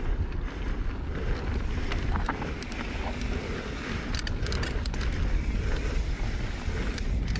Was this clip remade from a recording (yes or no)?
no